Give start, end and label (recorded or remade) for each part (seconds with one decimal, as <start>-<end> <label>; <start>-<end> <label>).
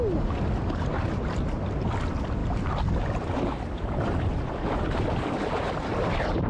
0.0-6.5 recorded